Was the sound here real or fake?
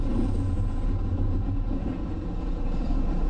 fake